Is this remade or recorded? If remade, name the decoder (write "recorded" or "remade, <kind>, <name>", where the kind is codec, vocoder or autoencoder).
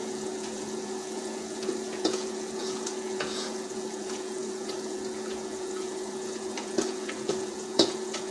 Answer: remade, vocoder, Vocos